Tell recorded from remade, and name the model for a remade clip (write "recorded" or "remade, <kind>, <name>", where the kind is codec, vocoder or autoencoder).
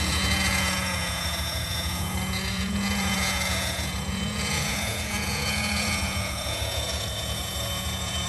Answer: remade, vocoder, Vocos